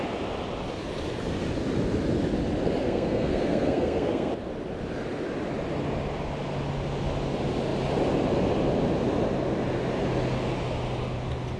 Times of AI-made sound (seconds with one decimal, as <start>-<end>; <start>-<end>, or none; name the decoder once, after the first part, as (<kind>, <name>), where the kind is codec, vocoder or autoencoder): 2.8-4.3 (codec, SNAC)